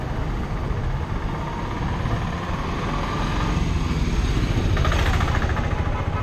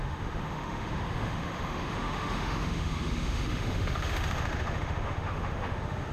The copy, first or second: second